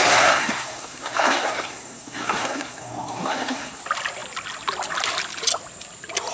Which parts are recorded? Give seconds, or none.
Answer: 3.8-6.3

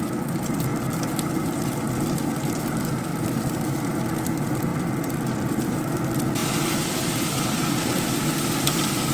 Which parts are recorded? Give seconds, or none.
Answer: 0.0-0.7; 1.6-3.1; 4.0-4.7; 5.9-6.4; 8.7-9.1

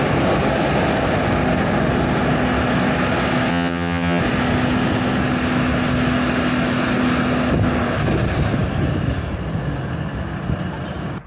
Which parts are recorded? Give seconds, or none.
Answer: 0.0-3.5; 4.2-11.3

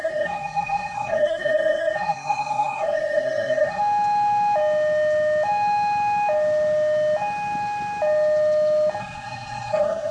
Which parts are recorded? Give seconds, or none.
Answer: 3.8-9.0